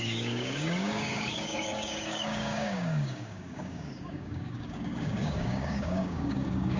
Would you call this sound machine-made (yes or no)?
yes